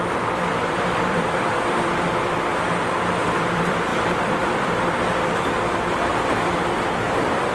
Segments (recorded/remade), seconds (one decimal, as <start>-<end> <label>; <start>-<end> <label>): 0.0-2.5 remade; 2.5-3.5 recorded; 3.5-6.1 remade; 6.1-7.1 recorded; 7.1-7.5 remade